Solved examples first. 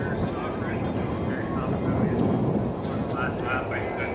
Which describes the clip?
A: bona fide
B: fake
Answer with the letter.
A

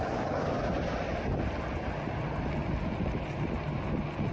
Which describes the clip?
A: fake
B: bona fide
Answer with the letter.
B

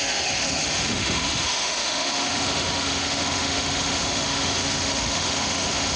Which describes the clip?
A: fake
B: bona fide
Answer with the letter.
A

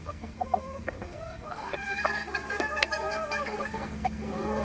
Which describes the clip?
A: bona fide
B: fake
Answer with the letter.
B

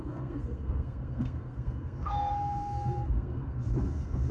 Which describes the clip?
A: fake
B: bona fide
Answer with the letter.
A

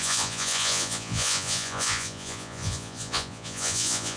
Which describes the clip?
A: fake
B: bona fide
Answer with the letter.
A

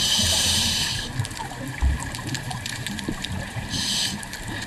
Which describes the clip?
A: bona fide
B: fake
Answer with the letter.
B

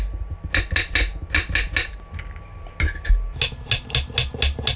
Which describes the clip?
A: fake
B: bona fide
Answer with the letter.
B